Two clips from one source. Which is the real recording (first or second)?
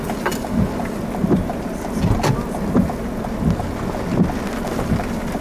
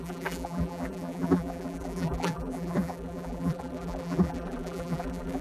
first